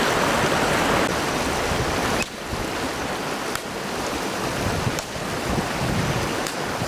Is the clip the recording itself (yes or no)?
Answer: yes